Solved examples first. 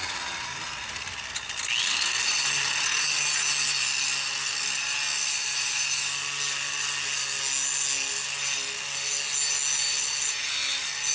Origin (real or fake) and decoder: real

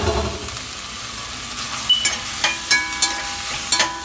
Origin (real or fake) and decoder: real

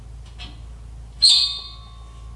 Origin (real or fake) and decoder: real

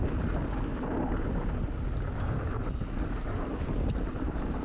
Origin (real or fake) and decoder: real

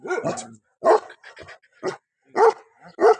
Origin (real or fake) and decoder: real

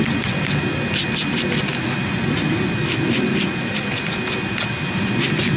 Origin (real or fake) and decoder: real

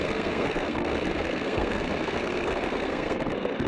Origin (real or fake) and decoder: fake, codec, SNAC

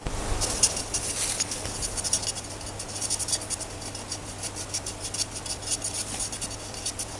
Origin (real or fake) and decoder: real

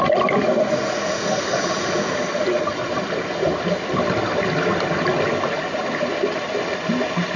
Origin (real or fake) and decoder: real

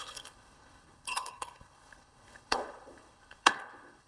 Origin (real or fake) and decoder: fake, codec, HILCodec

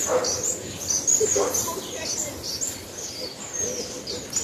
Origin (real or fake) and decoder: real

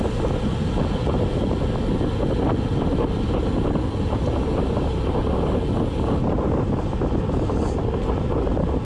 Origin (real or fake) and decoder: real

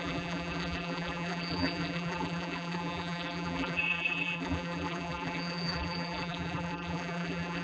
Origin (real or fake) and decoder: fake, vocoder, BigVGAN v2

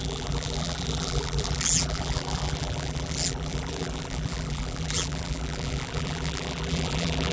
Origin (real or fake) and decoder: fake, vocoder, BigVGAN v2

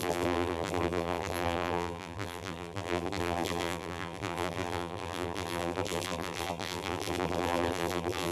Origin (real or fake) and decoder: fake, vocoder, BigVGAN v2